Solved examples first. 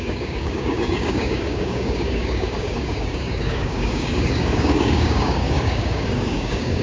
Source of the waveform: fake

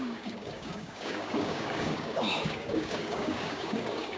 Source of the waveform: fake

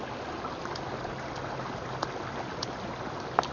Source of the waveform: real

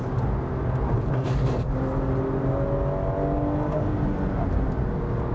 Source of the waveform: real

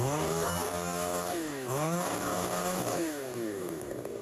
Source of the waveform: fake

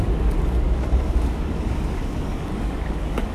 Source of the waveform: fake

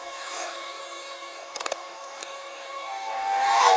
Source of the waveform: fake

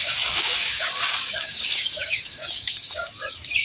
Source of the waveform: fake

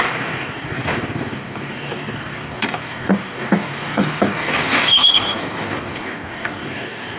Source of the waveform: fake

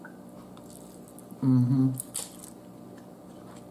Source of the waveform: real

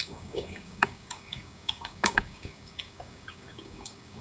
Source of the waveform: fake